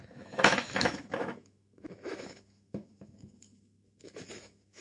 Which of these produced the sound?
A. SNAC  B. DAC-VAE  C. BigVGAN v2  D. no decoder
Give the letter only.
B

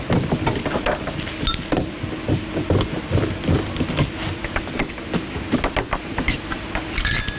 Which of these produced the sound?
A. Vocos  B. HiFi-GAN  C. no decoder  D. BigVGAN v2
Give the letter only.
C